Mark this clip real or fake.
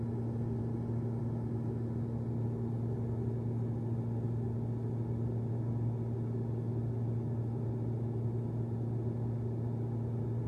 real